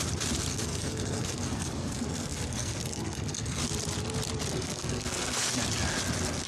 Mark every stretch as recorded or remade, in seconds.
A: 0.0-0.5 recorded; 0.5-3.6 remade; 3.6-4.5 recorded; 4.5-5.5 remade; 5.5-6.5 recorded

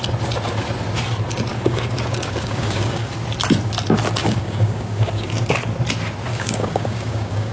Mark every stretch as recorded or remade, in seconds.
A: 0.0-1.5 recorded; 1.5-3.1 remade; 3.1-4.2 recorded; 4.2-5.4 remade; 5.4-6.3 recorded; 6.3-7.5 remade

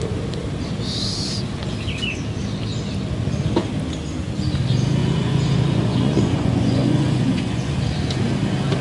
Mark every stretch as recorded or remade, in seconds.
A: 0.0-5.0 recorded; 5.0-7.7 remade; 7.7-8.8 recorded

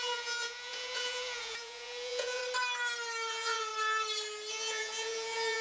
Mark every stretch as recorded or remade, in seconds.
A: 0.0-2.4 remade; 2.4-3.3 recorded; 3.3-3.7 remade; 3.7-4.5 recorded; 4.5-5.6 remade